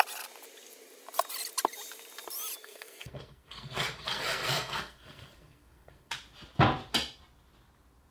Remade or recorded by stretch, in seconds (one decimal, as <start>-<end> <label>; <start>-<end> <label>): 0.0-2.6 recorded; 2.6-6.1 remade; 6.1-8.1 recorded

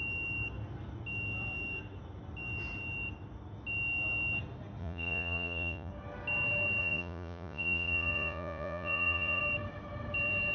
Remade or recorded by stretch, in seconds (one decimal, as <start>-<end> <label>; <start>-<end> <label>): 0.0-4.8 recorded; 4.8-5.9 remade; 5.9-6.8 recorded; 6.8-9.4 remade; 9.4-10.5 recorded

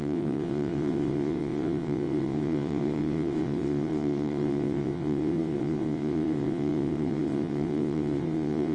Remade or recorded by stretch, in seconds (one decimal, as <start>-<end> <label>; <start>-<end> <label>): 0.0-8.7 remade

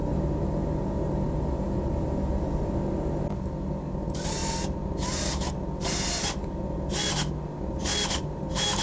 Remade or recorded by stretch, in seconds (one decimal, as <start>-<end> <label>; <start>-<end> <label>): 0.0-8.8 recorded